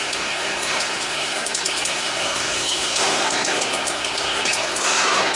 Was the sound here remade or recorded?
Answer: remade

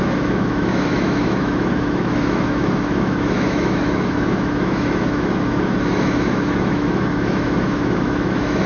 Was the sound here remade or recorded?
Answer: remade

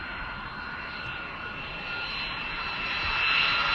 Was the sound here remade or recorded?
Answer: recorded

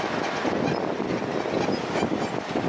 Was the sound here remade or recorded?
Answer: recorded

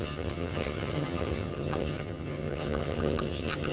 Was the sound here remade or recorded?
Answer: remade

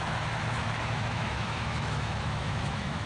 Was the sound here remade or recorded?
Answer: remade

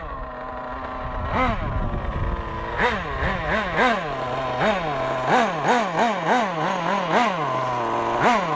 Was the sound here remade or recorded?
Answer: recorded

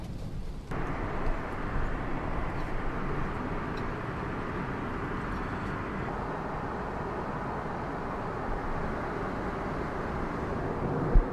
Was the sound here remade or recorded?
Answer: recorded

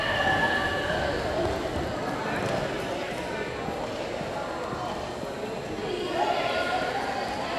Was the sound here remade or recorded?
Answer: recorded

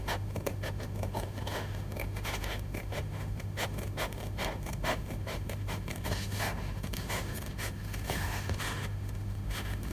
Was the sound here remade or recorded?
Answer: remade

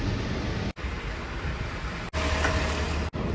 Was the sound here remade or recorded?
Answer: recorded